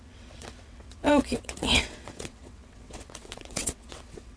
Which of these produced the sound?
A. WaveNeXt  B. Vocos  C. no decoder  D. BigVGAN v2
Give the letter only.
A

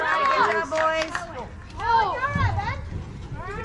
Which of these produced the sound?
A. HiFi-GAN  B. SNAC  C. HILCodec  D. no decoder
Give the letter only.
D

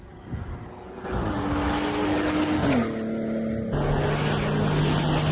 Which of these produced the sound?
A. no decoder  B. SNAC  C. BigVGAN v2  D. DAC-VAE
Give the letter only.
A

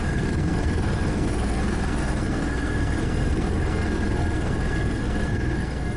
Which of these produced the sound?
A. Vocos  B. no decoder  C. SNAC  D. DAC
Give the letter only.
C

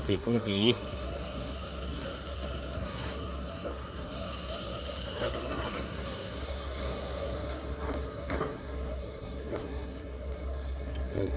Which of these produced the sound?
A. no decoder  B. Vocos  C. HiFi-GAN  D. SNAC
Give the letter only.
D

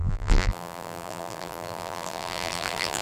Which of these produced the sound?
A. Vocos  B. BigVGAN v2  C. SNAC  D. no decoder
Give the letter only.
B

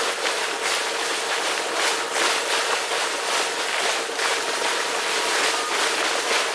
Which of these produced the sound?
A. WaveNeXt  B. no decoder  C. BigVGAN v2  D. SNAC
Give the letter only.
B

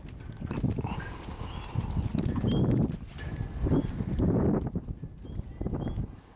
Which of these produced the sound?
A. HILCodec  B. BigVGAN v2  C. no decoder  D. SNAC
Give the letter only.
C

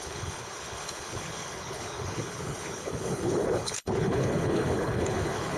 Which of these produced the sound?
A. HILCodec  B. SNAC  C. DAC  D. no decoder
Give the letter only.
A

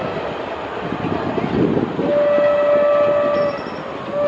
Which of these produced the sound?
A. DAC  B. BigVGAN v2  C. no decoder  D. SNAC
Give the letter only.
C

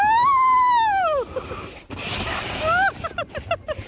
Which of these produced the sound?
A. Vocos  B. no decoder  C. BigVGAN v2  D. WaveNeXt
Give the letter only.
B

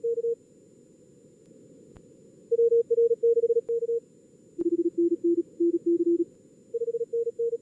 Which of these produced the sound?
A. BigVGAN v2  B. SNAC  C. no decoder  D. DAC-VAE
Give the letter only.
C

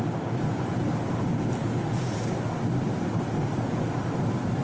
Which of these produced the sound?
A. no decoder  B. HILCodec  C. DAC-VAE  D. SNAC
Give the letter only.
A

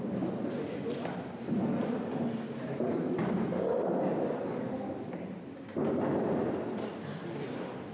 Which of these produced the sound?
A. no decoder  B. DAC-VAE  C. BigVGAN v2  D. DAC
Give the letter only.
A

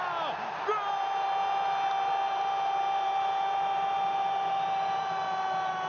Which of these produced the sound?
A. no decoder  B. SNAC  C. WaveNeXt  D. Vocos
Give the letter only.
A